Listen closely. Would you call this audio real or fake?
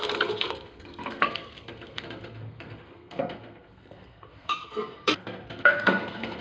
fake